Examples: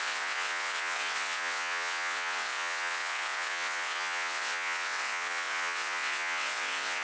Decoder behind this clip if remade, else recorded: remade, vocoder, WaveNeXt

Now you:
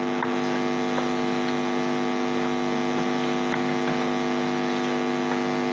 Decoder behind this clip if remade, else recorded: recorded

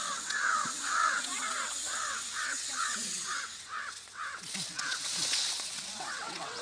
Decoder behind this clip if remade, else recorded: remade, vocoder, WaveNeXt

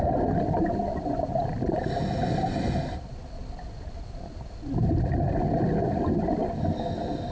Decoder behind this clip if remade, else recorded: recorded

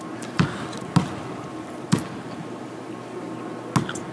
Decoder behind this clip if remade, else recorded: recorded